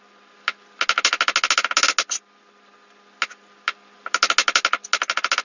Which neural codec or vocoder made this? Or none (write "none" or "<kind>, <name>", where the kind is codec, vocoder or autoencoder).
none